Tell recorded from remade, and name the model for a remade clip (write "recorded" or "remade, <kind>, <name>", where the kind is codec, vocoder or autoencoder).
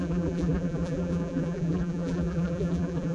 remade, vocoder, BigVGAN v2